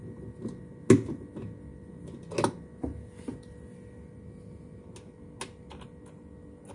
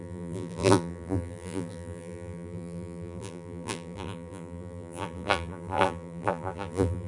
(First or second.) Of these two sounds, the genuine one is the first